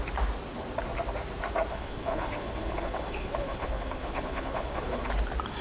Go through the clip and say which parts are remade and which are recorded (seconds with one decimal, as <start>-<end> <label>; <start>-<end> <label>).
0.0-1.7 recorded; 1.7-5.1 remade; 5.1-5.6 recorded